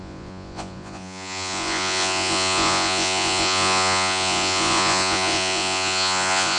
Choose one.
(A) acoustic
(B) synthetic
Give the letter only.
B